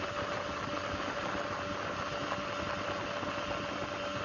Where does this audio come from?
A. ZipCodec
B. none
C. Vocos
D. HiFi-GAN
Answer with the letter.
B